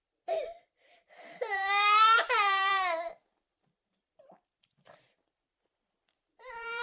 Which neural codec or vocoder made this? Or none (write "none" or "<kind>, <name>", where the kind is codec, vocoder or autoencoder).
vocoder, BigVGAN v2